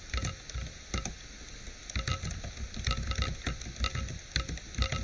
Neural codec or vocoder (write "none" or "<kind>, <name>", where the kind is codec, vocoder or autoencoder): none